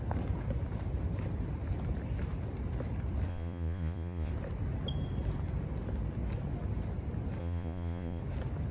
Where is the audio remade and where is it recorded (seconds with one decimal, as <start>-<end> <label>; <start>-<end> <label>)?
0.0-3.3 recorded; 3.3-4.3 remade; 4.3-7.4 recorded; 7.4-8.2 remade; 8.2-8.7 recorded